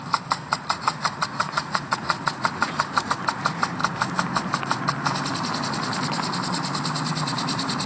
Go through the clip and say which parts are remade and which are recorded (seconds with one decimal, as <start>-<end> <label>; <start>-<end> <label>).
0.0-0.4 recorded; 0.4-3.1 remade; 3.1-7.9 recorded